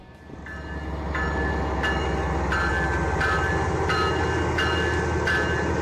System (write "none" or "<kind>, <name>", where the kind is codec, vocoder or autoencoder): none